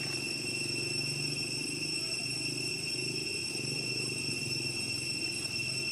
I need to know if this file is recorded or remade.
recorded